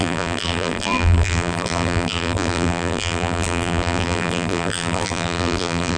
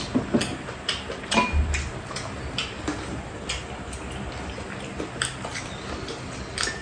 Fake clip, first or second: first